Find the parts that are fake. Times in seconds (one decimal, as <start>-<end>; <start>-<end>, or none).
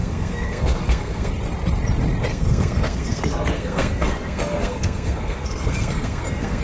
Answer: 0.0-1.3; 2.3-6.6